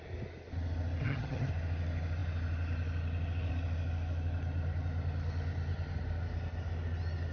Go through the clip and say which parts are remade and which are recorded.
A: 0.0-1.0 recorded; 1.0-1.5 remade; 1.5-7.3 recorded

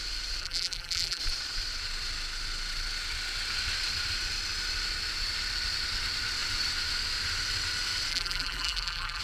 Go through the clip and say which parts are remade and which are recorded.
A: 0.0-0.4 recorded; 0.4-1.2 remade; 1.2-8.1 recorded; 8.1-9.2 remade

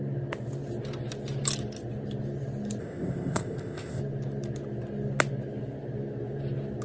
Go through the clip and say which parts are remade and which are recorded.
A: 0.0-2.8 recorded; 2.8-4.0 remade; 4.0-6.8 recorded

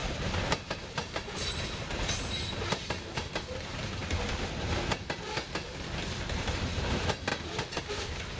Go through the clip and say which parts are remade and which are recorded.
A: 0.0-4.0 remade; 4.0-6.5 recorded; 6.5-8.4 remade

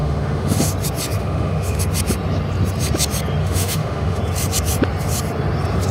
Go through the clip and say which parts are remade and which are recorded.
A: 0.0-0.7 remade; 0.7-1.2 recorded; 1.2-1.8 remade; 1.8-3.4 recorded; 3.4-4.2 remade; 4.2-5.9 recorded